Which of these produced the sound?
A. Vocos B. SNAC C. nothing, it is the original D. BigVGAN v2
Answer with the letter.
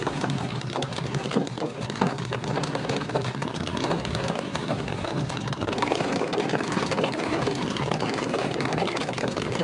B